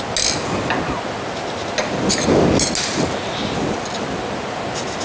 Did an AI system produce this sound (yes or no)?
no